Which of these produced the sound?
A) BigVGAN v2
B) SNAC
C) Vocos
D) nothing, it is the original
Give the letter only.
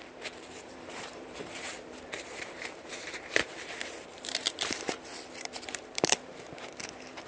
A